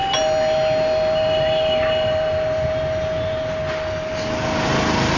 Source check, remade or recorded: recorded